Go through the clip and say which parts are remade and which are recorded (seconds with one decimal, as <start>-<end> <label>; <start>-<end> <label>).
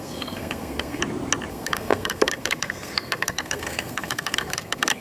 0.0-1.0 remade; 1.0-1.5 recorded; 1.5-5.0 remade